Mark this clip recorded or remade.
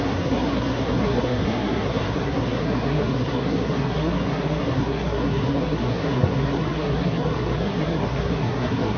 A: remade